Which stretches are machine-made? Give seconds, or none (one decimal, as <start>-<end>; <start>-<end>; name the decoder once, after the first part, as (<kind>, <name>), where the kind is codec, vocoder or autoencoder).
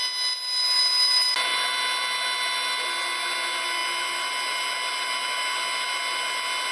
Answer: none